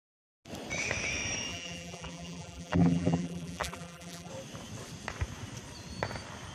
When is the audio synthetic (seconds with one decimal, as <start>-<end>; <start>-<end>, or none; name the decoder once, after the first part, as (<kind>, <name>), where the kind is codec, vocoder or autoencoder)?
1.5-4.3 (vocoder, BigVGAN v2)